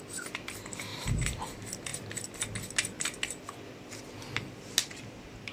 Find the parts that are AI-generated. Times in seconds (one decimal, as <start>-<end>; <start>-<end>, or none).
0.9-1.4; 4.8-5.5